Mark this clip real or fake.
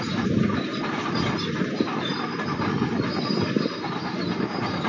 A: real